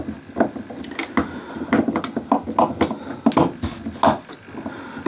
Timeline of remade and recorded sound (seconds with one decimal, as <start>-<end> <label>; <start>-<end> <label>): 0.0-5.1 recorded